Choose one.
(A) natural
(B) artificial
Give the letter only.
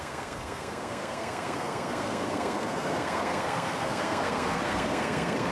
B